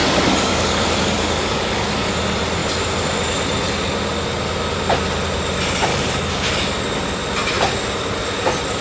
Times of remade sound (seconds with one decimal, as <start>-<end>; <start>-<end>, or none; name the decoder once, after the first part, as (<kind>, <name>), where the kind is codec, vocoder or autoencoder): 0.0-2.1 (codec, DAC); 5.9-6.8